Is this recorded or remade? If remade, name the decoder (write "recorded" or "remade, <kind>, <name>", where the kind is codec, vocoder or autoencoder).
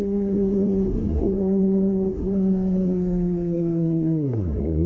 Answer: remade, codec, SNAC